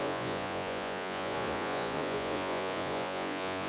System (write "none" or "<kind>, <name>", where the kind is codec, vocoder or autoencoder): vocoder, Vocos